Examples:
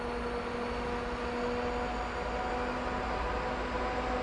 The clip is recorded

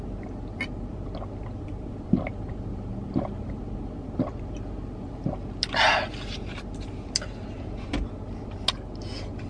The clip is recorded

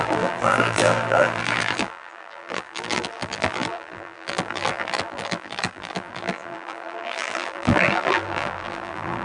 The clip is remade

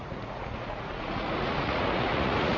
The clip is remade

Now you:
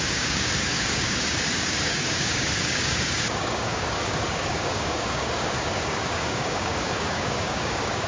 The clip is remade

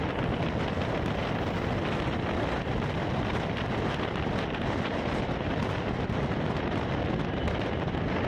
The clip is recorded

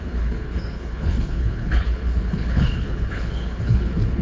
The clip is remade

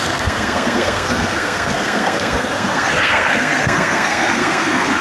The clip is remade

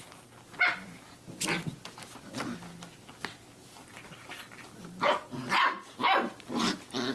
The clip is recorded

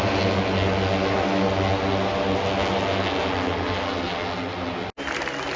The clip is recorded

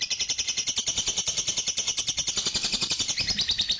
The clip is recorded